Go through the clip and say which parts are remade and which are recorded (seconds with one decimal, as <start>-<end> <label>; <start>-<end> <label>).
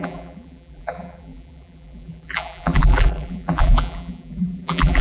0.0-5.0 remade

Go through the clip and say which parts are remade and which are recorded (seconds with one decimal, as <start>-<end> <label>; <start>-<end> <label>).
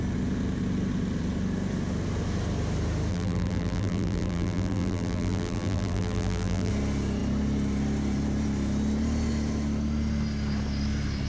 0.0-3.1 recorded; 3.1-6.7 remade; 6.7-11.3 recorded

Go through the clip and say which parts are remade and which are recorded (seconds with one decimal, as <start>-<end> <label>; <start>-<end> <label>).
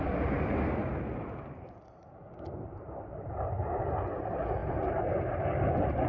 0.0-0.8 recorded; 0.8-3.9 remade; 3.9-4.6 recorded; 4.6-5.4 remade; 5.4-6.1 recorded